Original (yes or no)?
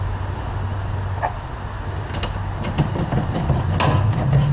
yes